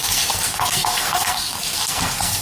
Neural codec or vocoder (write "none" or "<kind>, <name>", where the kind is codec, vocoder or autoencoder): codec, SNAC